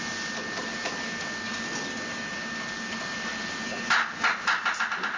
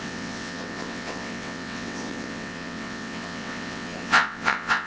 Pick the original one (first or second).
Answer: first